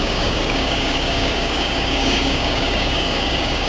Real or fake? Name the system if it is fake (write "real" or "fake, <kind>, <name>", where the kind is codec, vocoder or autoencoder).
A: fake, codec, DAC